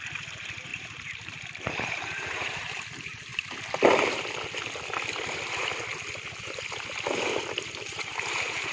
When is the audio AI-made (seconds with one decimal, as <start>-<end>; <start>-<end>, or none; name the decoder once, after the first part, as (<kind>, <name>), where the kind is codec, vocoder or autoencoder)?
0.0-3.3 (vocoder, BigVGAN v2); 7.6-8.7